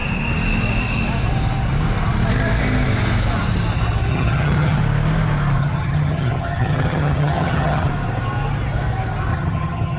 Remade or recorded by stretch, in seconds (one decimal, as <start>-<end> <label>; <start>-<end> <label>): 0.0-4.1 recorded; 4.1-4.8 remade; 4.8-5.6 recorded; 5.6-7.9 remade; 7.9-9.3 recorded; 9.3-10.0 remade